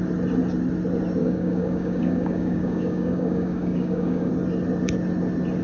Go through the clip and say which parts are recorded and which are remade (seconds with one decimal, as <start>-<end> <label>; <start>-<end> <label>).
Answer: 0.0-1.2 recorded; 1.2-4.3 remade; 4.3-5.6 recorded